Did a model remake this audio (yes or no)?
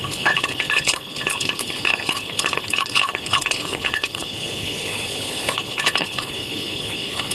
yes